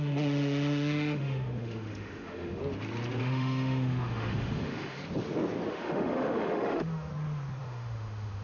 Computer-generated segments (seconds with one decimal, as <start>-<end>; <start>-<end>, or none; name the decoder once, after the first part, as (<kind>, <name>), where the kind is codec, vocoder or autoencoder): 0.0-2.6 (autoencoder, DAC-VAE); 3.2-5.0; 5.7-7.1; 7.6-8.4